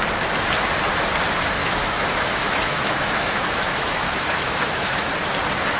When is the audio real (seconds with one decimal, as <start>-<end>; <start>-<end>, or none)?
0.0-1.6; 5.1-5.8

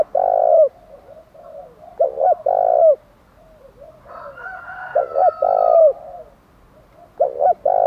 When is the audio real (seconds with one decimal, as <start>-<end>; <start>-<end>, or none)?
0.0-7.9

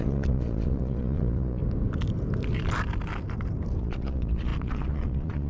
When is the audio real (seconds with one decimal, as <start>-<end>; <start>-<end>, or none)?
1.6-3.8

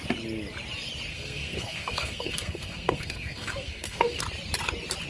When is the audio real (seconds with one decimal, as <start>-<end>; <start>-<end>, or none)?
0.0-1.1; 4.2-5.1

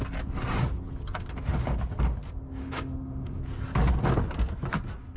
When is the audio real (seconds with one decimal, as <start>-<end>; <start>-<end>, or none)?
0.0-2.6; 3.4-5.2